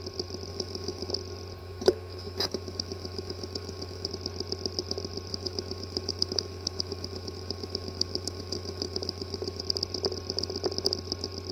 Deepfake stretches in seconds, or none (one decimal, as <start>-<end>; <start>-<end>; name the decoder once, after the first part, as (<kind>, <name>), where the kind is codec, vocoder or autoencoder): 0.5-1.1 (autoencoder, DAC-VAE); 1.6-4.1; 5.3-9.6